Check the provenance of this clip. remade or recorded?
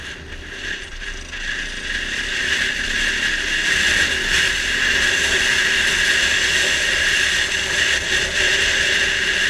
recorded